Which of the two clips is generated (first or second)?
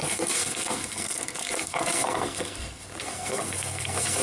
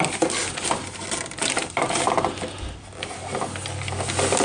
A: first